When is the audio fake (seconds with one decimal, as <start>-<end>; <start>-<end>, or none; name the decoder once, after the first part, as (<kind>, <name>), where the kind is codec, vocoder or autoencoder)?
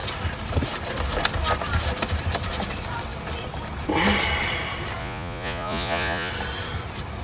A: 5.0-6.3 (vocoder, Vocos)